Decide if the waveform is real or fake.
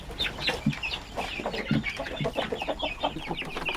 real